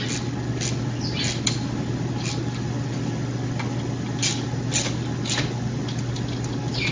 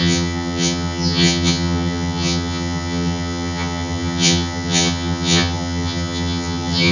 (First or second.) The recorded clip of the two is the first